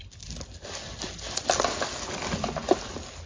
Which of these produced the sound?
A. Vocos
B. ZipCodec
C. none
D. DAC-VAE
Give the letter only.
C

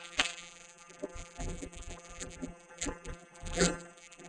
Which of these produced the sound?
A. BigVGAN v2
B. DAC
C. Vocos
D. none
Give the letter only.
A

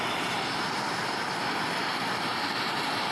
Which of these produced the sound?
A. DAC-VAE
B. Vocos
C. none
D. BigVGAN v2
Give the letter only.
D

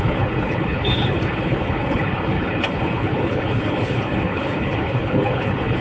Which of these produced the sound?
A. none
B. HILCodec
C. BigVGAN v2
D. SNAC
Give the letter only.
B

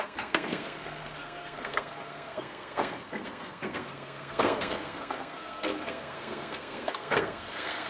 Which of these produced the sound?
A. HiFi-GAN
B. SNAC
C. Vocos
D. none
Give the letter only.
B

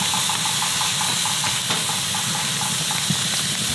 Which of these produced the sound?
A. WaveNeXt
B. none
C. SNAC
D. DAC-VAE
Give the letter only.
B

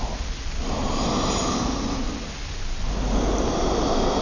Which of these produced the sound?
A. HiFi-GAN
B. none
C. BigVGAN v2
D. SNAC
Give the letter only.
B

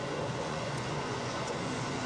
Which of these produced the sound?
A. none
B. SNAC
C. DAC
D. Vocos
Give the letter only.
D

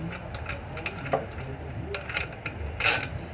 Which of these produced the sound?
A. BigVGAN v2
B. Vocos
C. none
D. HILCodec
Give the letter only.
C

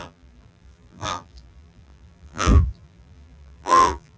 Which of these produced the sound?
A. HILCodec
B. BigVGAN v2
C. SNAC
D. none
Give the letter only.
B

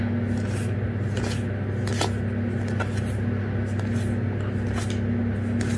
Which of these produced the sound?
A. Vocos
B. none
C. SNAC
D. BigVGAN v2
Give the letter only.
B